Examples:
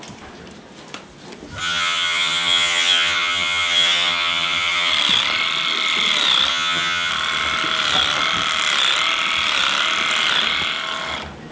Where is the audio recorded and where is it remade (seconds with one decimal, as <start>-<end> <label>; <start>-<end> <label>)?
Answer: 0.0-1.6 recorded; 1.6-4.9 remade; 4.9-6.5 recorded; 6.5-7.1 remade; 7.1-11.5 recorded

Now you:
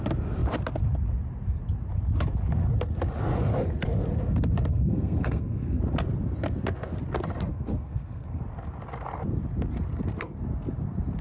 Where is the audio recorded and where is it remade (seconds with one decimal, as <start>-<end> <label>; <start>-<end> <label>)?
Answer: 0.0-4.7 recorded; 4.7-5.8 remade; 5.8-7.5 recorded; 7.5-8.4 remade; 8.4-11.2 recorded

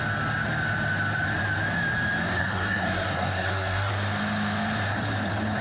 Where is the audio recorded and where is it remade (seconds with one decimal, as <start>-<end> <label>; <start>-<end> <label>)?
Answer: 0.0-2.4 recorded; 2.4-3.9 remade; 3.9-5.6 recorded

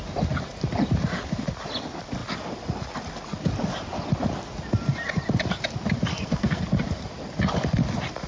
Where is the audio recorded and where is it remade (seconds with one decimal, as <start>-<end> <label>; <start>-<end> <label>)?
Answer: 0.0-6.1 recorded; 6.1-6.6 remade; 6.6-8.3 recorded

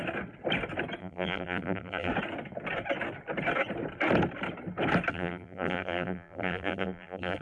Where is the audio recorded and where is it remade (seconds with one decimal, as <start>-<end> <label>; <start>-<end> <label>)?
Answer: 0.0-1.0 recorded; 1.0-2.1 remade; 2.1-5.1 recorded; 5.1-7.4 remade

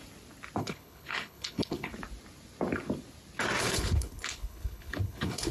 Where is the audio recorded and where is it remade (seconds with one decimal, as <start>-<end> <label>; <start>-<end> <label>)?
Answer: 0.0-0.6 recorded; 0.6-1.9 remade; 1.9-3.6 recorded; 3.6-5.5 remade